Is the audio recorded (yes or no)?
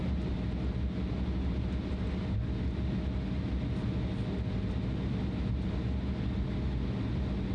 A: yes